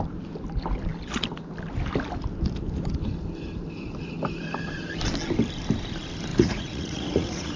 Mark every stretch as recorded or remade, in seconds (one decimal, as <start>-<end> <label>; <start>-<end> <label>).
0.0-6.3 recorded; 6.3-7.6 remade